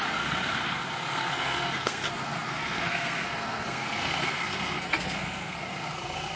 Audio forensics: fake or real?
fake